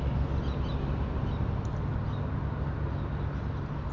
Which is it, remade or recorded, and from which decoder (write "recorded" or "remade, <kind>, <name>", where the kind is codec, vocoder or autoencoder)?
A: recorded